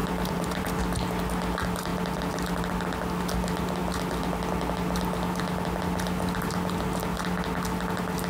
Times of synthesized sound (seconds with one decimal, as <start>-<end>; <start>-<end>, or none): 0.0-0.8; 1.9-2.6